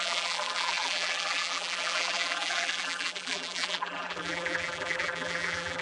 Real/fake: fake